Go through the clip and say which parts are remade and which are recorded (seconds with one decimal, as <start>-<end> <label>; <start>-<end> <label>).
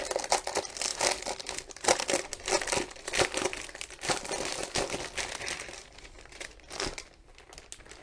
0.0-0.9 recorded; 0.9-2.0 remade; 2.0-8.0 recorded